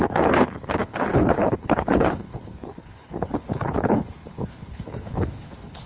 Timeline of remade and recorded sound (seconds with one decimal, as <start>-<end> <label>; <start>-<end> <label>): 0.0-5.9 remade